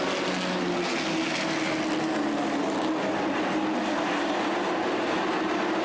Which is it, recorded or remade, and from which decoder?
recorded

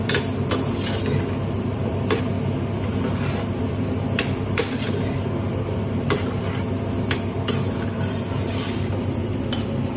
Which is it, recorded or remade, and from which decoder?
recorded